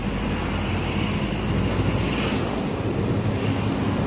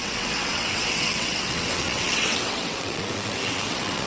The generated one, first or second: second